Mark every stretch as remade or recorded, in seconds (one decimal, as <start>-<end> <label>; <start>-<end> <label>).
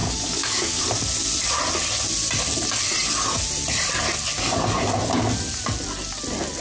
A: 0.0-0.8 remade; 0.8-6.6 recorded